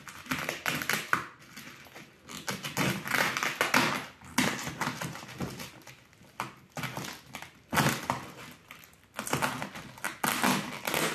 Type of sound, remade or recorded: recorded